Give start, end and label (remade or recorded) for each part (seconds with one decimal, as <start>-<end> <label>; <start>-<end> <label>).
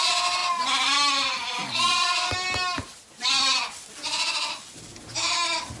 0.0-5.8 recorded